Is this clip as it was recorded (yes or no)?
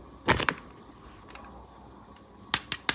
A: yes